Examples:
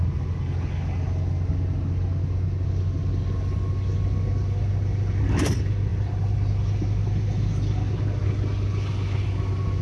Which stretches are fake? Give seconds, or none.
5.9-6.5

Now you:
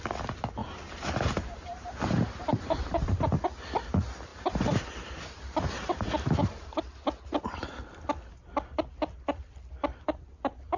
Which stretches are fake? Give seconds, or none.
0.6-3.4; 4.3-6.8

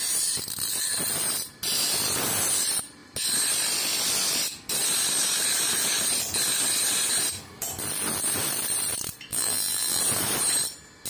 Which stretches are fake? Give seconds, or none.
9.3-10.0

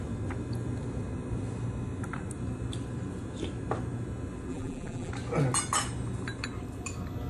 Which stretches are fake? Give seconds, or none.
4.5-5.1

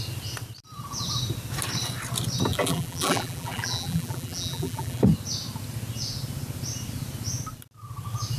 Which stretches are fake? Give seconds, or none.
2.5-5.0